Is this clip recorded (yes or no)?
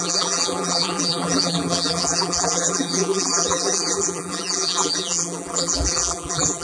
no